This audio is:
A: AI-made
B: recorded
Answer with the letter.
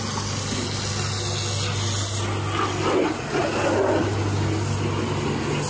B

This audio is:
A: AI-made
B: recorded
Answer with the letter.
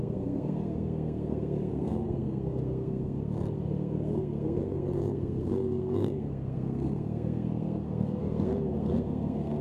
A